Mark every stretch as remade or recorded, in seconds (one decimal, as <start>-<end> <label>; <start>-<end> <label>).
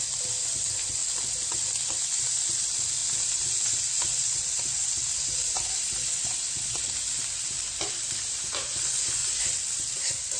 0.0-9.2 recorded; 9.2-10.4 remade